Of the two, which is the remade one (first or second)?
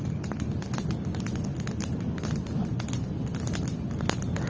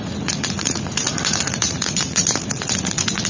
second